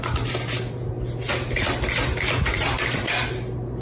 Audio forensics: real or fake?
real